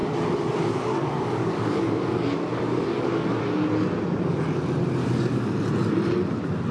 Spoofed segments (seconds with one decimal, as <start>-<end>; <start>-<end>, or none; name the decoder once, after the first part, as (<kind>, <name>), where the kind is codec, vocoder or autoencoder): 0.0-3.4 (codec, DAC); 5.0-5.5